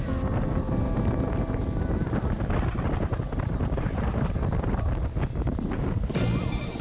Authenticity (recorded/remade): recorded